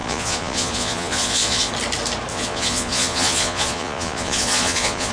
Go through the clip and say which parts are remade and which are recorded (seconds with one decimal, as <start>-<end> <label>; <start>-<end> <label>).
0.0-1.7 remade; 1.7-2.3 recorded; 2.3-5.1 remade